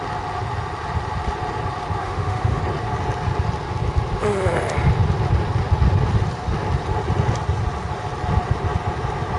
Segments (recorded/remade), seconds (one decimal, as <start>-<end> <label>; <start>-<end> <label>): 0.0-2.0 recorded; 2.0-2.6 remade; 2.6-9.4 recorded